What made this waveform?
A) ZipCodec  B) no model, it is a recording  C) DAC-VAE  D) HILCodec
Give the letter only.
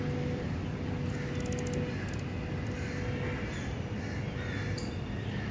B